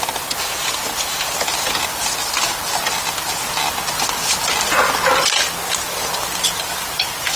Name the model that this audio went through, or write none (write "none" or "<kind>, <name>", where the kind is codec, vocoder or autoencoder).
none